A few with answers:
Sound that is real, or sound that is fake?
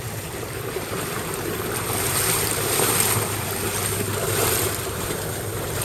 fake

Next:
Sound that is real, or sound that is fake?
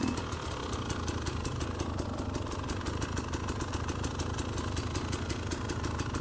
real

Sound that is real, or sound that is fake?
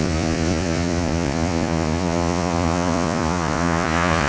fake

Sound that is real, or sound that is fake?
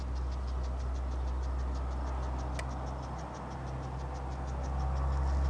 real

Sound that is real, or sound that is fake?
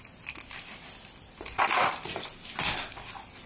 real